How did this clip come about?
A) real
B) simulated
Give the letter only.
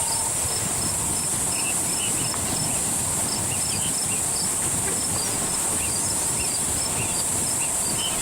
A